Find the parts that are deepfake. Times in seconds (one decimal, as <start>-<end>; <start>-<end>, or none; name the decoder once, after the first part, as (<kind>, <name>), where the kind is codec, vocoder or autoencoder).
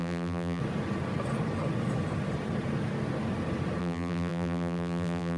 0.0-0.6 (vocoder, BigVGAN v2); 3.8-5.4